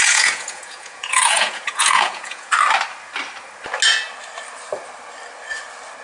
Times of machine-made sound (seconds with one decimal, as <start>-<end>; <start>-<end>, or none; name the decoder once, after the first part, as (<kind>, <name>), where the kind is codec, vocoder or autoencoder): 0.0-2.5 (vocoder, Vocos)

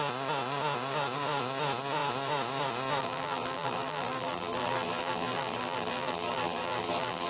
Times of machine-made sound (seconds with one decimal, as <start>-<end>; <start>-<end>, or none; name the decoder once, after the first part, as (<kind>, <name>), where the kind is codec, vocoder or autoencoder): 3.0-7.3 (vocoder, BigVGAN v2)